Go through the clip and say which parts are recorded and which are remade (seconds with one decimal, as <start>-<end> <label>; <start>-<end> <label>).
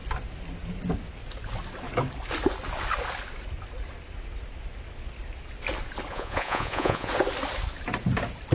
0.0-6.1 recorded; 6.1-7.1 remade; 7.1-8.5 recorded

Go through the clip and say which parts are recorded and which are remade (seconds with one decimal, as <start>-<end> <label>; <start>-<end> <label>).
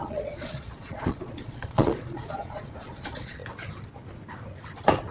0.0-3.4 remade; 3.4-5.1 recorded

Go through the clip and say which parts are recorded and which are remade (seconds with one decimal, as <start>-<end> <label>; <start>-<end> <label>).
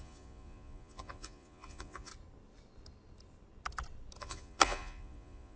0.0-2.1 remade; 2.1-4.2 recorded; 4.2-5.6 remade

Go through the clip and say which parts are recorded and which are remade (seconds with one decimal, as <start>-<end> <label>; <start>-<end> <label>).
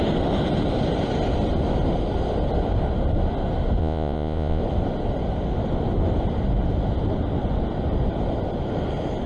0.0-3.8 recorded; 3.8-4.6 remade; 4.6-9.3 recorded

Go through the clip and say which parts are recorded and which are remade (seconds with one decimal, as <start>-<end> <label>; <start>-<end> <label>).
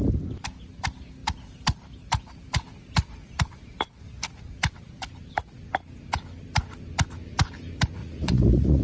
0.0-8.0 recorded; 8.0-8.8 remade